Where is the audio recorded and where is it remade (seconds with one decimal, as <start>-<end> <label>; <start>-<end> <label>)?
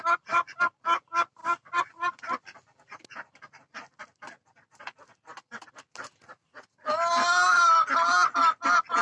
0.0-9.0 recorded